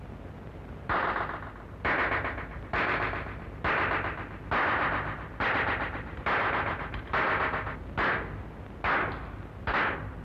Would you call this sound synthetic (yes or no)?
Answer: no